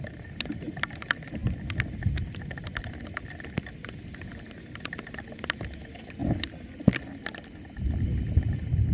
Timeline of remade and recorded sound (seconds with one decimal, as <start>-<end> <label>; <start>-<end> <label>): 0.0-8.9 recorded